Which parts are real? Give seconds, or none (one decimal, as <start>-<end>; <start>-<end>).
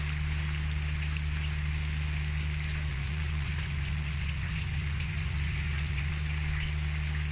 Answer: 0.0-2.9; 6.1-7.3